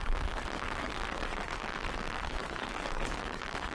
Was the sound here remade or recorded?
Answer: remade